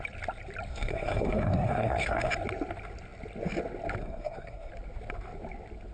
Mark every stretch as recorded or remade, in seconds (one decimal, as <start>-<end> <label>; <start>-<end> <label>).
0.0-0.7 recorded; 0.7-2.3 remade; 2.3-4.0 recorded; 4.0-4.7 remade; 4.7-5.9 recorded